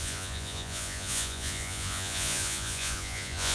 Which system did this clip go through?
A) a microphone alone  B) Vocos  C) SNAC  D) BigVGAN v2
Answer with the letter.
B